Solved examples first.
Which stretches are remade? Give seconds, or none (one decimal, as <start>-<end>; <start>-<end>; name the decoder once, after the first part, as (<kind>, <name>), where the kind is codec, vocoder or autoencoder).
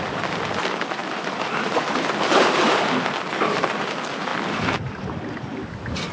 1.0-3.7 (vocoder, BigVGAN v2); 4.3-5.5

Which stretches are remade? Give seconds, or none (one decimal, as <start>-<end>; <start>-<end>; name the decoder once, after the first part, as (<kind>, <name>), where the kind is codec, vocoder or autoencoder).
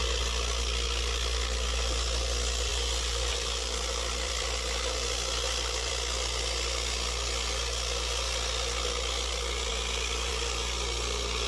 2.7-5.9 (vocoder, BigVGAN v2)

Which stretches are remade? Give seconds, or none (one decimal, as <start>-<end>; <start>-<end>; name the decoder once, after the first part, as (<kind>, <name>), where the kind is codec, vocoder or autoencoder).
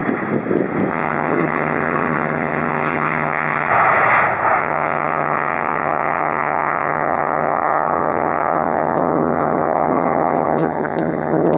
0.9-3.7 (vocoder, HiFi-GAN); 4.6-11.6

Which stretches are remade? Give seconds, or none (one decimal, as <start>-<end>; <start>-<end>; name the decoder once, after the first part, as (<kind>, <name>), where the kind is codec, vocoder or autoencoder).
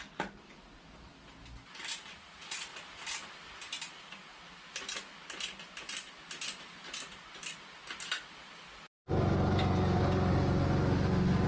none